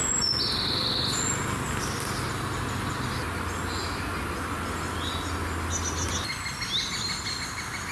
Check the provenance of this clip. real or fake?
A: real